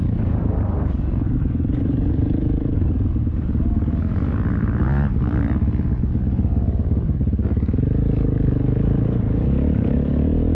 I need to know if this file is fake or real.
fake